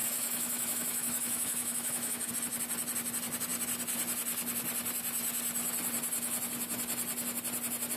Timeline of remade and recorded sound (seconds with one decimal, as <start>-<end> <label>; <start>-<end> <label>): 0.0-2.3 remade; 2.3-8.0 recorded